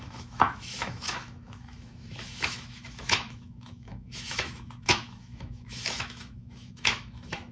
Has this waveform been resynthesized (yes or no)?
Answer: yes